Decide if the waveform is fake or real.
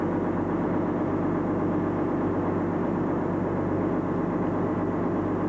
real